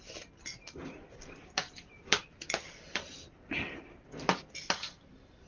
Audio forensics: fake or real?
real